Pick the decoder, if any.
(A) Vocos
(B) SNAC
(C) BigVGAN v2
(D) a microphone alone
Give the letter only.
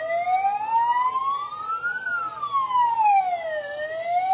D